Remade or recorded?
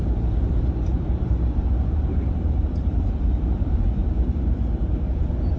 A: remade